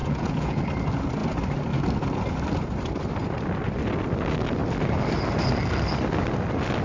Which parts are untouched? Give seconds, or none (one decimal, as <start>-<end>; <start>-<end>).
0.6-6.8